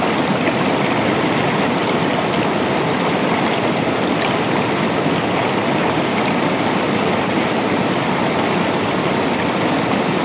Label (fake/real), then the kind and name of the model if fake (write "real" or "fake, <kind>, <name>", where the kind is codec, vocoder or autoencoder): real